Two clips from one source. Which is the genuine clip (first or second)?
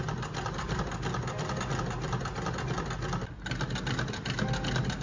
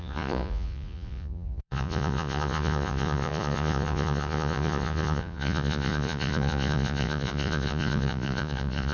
first